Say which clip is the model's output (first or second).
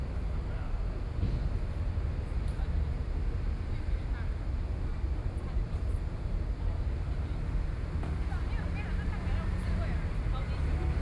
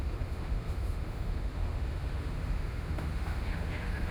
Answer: second